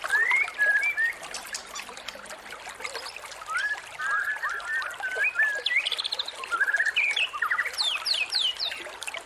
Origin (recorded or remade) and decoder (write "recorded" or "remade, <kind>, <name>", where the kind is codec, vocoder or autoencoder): recorded